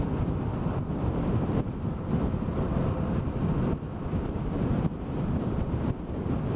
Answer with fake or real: real